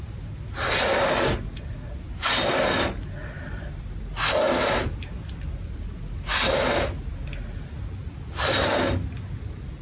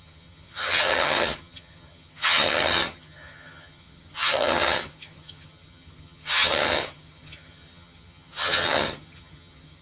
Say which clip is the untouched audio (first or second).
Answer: first